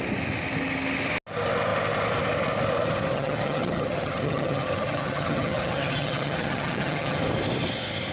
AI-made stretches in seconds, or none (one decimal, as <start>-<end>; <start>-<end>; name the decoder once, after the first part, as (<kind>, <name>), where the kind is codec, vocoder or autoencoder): 3.1-7.2 (vocoder, HiFi-GAN)